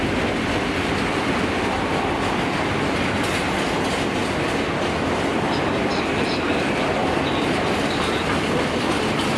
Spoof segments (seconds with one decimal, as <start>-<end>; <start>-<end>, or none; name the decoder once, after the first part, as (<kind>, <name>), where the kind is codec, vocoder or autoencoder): 7.0-9.0 (vocoder, BigVGAN v2)